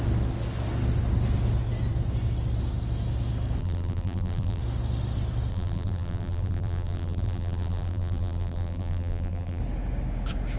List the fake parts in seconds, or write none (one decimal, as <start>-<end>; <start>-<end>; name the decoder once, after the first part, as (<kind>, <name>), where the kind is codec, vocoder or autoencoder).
3.6-4.6 (vocoder, BigVGAN v2); 5.5-9.6